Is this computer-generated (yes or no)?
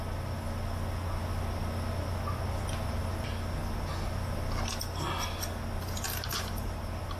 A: no